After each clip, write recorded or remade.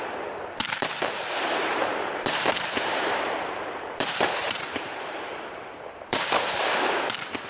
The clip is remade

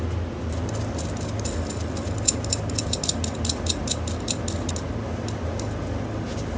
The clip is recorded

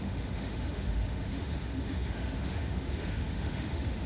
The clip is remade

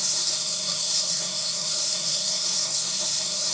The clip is remade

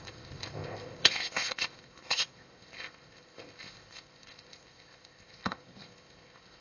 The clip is remade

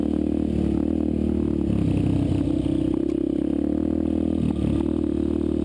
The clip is recorded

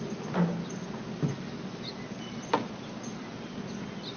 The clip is recorded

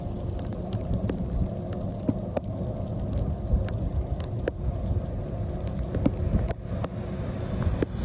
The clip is recorded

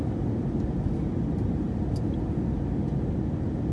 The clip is recorded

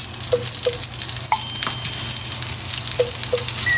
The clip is recorded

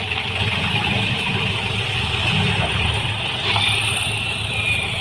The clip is recorded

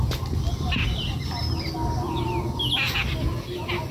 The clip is recorded